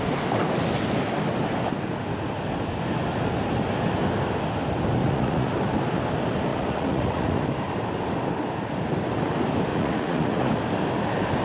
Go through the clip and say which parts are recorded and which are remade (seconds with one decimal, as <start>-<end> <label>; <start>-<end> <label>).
0.0-5.0 recorded; 5.0-5.5 remade; 5.5-6.5 recorded; 6.5-7.4 remade; 7.4-9.7 recorded; 9.7-10.5 remade; 10.5-11.4 recorded